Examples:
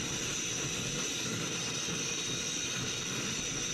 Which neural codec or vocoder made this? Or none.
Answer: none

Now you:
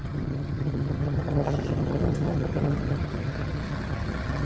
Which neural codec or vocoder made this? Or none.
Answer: vocoder, HiFi-GAN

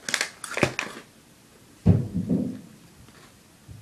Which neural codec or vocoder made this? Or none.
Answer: none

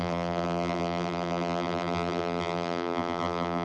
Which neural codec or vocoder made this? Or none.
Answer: vocoder, BigVGAN v2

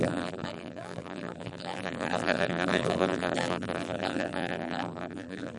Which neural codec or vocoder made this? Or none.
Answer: vocoder, BigVGAN v2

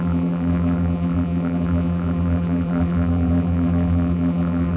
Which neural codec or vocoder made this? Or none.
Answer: vocoder, BigVGAN v2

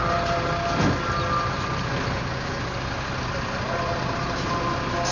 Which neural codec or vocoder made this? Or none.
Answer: none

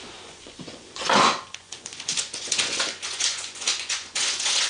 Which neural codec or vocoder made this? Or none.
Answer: vocoder, Vocos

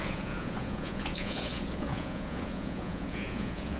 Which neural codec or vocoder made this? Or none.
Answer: vocoder, Vocos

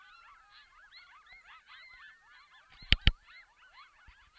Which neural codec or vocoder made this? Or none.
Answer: none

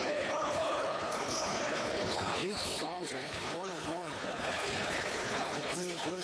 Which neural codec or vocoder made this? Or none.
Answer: codec, HILCodec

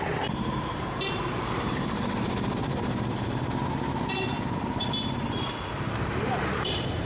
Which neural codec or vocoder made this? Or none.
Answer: vocoder, BigVGAN v2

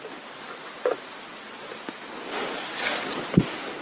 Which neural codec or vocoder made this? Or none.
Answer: none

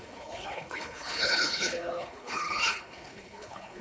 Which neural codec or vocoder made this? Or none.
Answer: codec, HILCodec